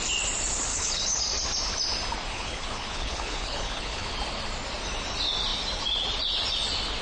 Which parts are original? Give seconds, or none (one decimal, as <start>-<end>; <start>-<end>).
0.0-0.7; 1.2-2.3; 4.1-7.0